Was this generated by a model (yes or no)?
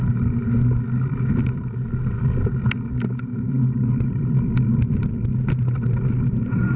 no